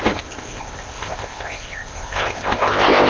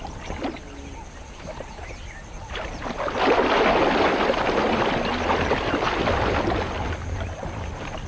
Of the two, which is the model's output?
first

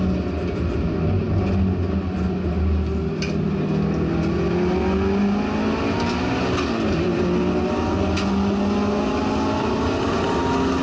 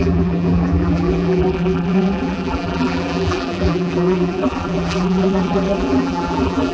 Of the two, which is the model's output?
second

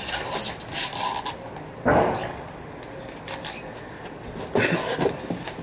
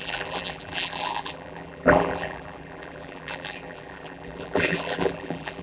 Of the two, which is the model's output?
second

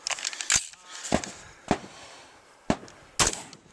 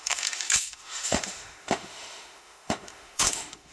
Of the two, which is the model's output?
second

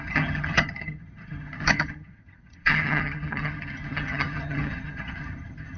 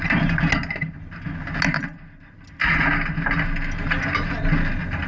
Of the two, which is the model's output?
first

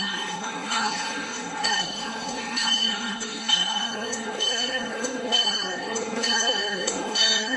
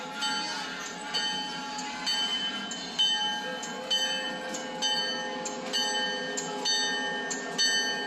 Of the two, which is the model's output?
first